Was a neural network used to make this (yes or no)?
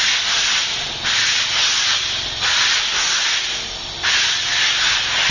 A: no